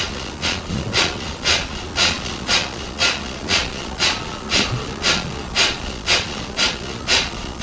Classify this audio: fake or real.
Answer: fake